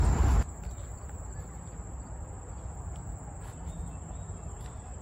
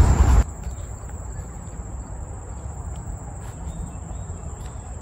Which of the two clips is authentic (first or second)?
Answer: first